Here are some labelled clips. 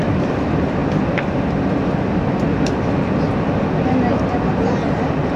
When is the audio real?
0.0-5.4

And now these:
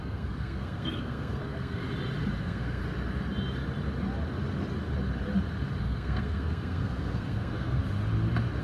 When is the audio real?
1.8-2.4; 2.8-5.8; 7.8-8.6